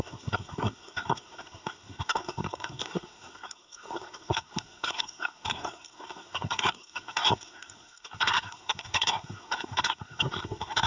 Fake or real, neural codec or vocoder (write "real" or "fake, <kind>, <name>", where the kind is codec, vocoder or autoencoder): fake, codec, SNAC